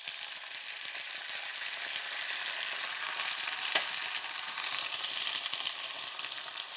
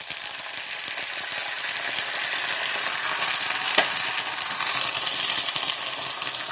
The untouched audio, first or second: second